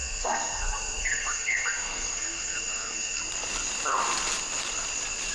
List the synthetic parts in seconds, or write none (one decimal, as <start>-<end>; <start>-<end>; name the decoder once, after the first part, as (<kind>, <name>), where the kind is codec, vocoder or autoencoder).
0.0-3.2 (codec, SNAC)